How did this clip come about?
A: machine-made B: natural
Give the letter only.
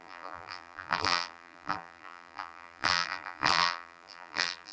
A